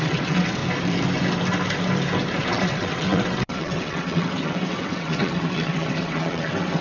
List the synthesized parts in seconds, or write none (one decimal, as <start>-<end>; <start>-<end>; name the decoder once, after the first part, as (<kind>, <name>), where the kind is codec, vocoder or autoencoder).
0.0-0.6 (vocoder, WaveNeXt); 2.4-6.8